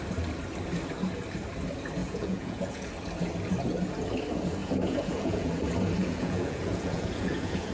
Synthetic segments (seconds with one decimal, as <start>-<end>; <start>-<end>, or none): 2.0-2.9; 4.6-5.5; 6.0-7.7